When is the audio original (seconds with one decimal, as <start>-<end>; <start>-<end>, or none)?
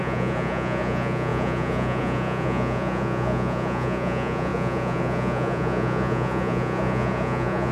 none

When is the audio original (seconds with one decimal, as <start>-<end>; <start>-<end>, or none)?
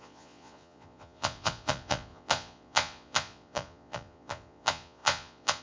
none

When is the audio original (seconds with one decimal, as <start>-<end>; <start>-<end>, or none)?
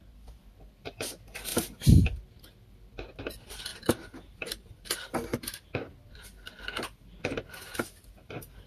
0.0-8.7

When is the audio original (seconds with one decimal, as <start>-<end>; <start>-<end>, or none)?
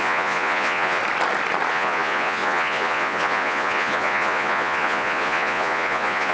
1.0-1.7